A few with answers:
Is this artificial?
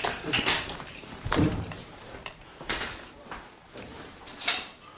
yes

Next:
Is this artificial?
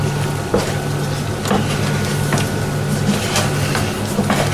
no